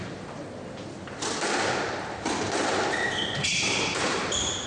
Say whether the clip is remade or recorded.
recorded